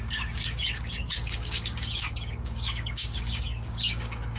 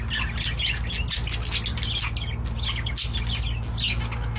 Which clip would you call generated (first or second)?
first